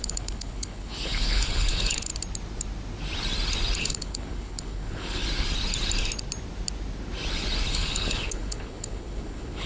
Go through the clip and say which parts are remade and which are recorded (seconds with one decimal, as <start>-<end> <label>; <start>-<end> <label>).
0.0-2.1 remade; 2.1-3.8 recorded; 3.8-5.2 remade; 5.2-7.7 recorded; 7.7-9.7 remade

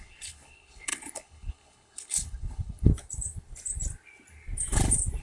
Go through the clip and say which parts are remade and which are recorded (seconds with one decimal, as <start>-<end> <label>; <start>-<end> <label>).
0.0-2.9 remade; 2.9-5.2 recorded

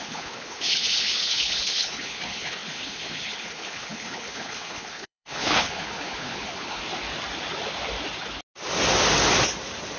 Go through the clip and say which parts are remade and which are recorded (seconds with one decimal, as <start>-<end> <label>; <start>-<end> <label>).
0.0-6.8 remade; 6.8-10.0 recorded

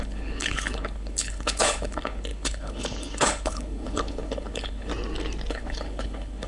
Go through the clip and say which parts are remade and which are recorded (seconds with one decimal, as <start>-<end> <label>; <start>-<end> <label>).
0.0-4.9 remade; 4.9-5.5 recorded; 5.5-6.5 remade

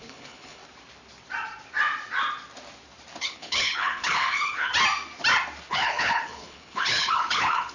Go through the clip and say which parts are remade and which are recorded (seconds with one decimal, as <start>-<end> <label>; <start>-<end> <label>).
0.0-0.6 remade; 0.6-3.2 recorded; 3.2-4.7 remade; 4.7-5.7 recorded; 5.7-7.7 remade

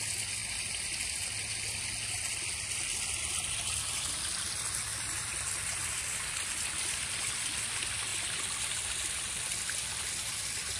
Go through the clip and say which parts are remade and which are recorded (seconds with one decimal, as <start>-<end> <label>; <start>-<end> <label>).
0.0-10.8 recorded

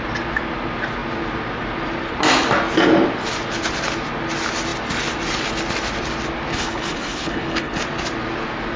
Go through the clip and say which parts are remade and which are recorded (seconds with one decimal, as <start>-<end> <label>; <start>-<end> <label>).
0.0-6.5 recorded; 6.5-7.8 remade; 7.8-8.8 recorded